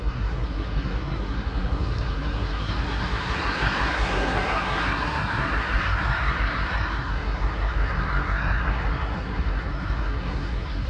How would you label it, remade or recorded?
remade